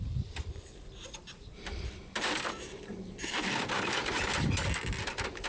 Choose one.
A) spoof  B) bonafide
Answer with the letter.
B